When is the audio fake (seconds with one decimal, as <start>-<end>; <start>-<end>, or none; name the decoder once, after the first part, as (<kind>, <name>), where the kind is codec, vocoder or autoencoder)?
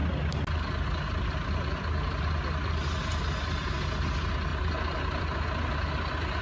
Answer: none